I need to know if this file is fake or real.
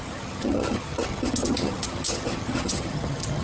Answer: fake